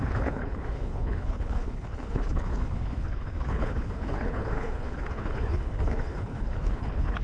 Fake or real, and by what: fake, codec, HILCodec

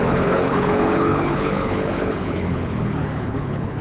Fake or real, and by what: fake, codec, HILCodec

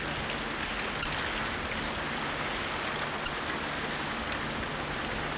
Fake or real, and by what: real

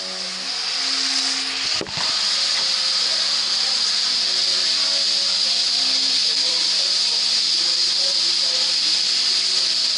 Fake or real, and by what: real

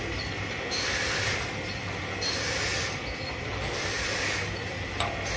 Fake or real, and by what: fake, vocoder, BigVGAN v2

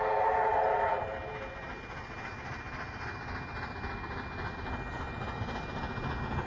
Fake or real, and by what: real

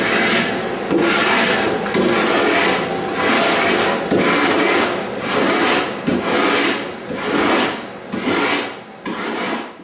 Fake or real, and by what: real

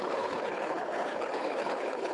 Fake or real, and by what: fake, codec, HILCodec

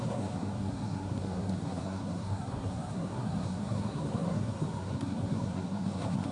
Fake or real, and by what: fake, codec, SNAC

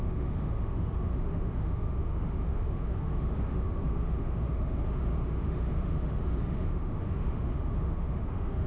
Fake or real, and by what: fake, autoencoder, DAC-VAE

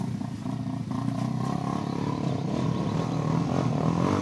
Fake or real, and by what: real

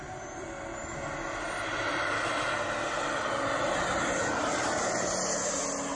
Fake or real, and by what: real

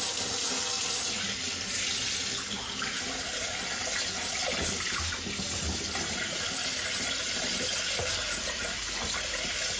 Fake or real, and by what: real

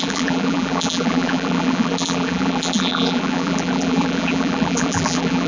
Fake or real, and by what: fake, vocoder, BigVGAN v2